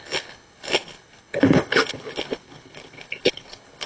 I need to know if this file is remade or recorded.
remade